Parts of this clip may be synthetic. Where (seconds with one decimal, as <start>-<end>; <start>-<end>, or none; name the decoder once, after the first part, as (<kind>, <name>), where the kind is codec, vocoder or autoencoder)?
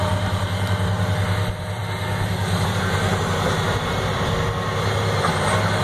0.0-1.8 (vocoder, BigVGAN v2); 5.3-5.8